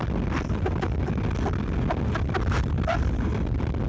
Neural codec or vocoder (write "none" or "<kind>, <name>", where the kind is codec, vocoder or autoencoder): none